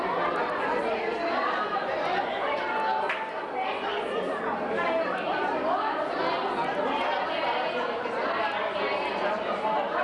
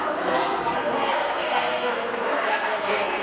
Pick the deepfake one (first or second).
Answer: second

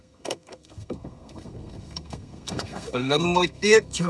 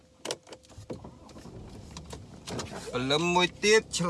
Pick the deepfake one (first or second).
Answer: first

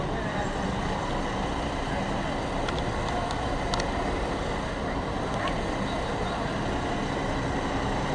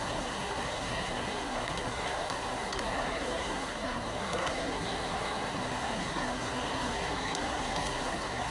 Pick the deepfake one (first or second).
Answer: second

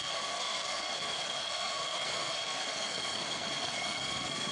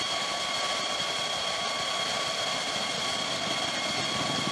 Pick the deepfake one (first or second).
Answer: first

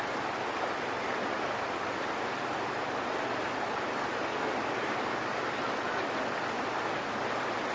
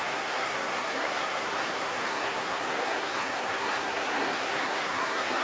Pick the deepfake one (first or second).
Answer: second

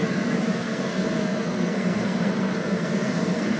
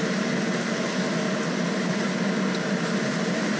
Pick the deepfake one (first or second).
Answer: first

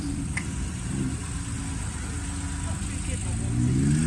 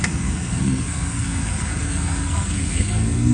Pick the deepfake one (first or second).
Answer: second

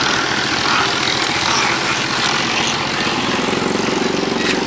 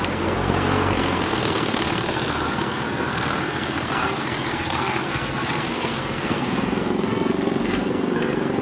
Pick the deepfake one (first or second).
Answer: second